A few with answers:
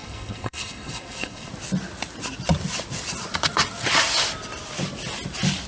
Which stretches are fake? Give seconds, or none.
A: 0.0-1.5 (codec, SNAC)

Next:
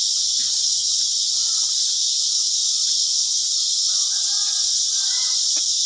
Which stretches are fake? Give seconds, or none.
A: 3.4-5.5 (vocoder, Vocos)

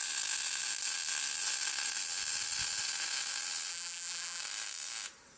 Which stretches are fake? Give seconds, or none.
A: 3.7-4.4 (vocoder, BigVGAN v2)

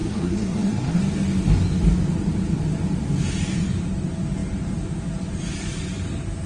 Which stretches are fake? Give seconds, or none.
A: 0.0-1.0 (codec, SNAC)

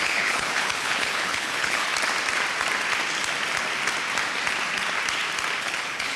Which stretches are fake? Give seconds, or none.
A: 0.0-1.9 (codec, HILCodec); 5.6-6.2

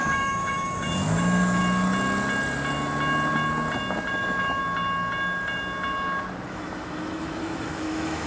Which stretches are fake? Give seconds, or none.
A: 0.0-1.6 (autoencoder, DAC-VAE); 4.1-4.6; 6.5-8.3